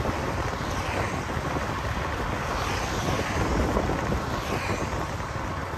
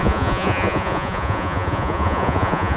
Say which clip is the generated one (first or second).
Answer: second